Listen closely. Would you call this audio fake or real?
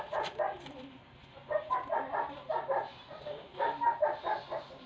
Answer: real